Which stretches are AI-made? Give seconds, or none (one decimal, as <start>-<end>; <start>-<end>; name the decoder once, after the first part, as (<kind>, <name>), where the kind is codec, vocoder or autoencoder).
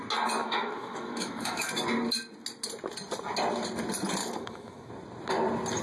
0.4-1.7 (autoencoder, DAC-VAE); 4.2-4.9